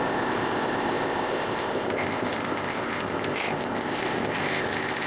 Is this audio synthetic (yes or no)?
yes